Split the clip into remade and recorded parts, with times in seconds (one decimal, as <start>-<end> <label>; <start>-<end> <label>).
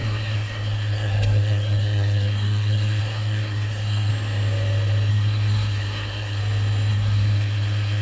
0.0-4.1 remade; 4.1-5.1 recorded; 5.1-6.4 remade; 6.4-6.9 recorded; 6.9-8.0 remade